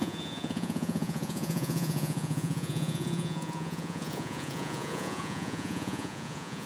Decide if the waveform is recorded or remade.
remade